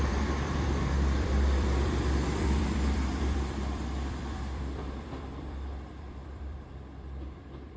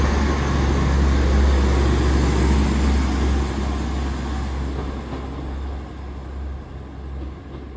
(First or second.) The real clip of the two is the second